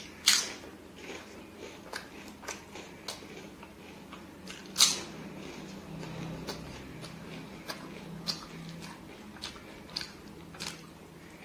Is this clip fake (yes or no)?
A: no